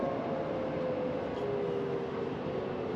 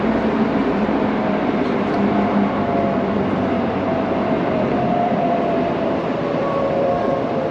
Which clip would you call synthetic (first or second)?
second